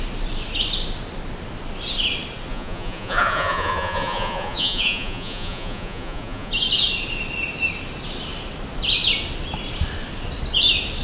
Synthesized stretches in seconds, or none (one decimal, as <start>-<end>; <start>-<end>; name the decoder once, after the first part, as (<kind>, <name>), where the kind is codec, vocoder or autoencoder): 2.5-6.5 (vocoder, Vocos)